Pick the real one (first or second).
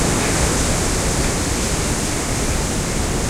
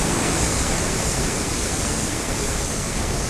first